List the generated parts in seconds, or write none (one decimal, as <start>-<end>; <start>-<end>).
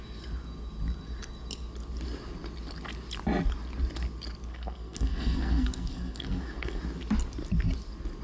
4.5-6.8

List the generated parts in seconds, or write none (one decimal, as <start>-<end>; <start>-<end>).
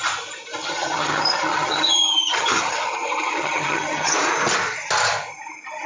0.6-4.1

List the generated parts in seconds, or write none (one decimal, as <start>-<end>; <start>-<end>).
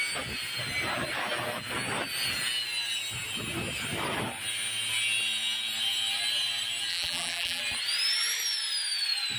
6.9-7.6